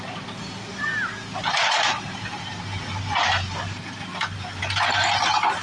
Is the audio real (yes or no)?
yes